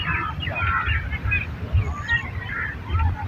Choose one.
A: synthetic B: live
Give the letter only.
B